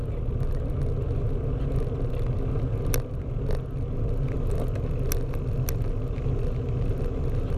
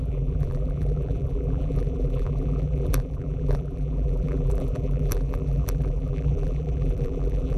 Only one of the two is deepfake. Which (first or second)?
second